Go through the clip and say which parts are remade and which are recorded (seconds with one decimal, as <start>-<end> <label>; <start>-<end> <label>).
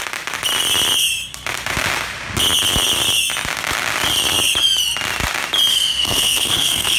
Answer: 0.0-5.7 recorded; 5.7-7.0 remade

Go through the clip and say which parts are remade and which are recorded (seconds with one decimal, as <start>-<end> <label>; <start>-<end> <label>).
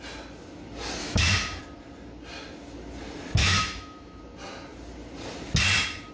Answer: 0.0-1.0 recorded; 1.0-1.6 remade; 1.6-3.4 recorded; 3.4-4.2 remade; 4.2-6.1 recorded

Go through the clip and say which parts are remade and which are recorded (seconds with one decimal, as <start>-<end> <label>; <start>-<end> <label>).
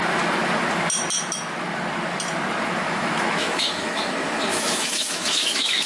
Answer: 0.0-2.8 recorded; 2.8-4.0 remade; 4.0-4.5 recorded; 4.5-5.9 remade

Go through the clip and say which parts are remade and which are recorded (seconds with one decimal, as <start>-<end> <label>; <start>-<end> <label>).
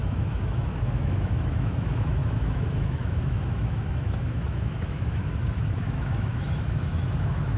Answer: 0.0-7.6 remade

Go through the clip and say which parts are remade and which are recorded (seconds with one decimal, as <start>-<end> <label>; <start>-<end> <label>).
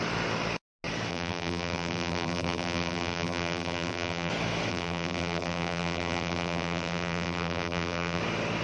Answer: 0.0-1.1 recorded; 1.1-4.3 remade; 4.3-4.7 recorded; 4.7-8.2 remade; 8.2-8.6 recorded